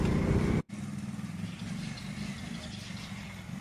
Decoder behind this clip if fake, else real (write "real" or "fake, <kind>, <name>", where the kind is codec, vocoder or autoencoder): real